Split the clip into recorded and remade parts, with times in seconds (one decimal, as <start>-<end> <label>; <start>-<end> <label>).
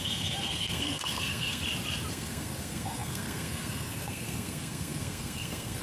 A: 0.0-1.6 remade; 1.6-2.1 recorded; 2.1-5.8 remade